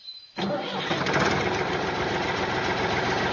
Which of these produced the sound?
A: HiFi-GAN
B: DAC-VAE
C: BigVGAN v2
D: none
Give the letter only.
C